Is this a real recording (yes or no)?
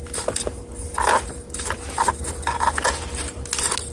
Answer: yes